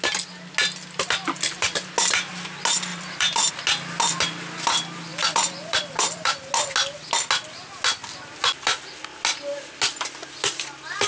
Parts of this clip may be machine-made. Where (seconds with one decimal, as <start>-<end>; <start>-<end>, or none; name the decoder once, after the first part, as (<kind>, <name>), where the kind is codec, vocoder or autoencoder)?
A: 2.9-3.5 (vocoder, BigVGAN v2); 5.1-6.5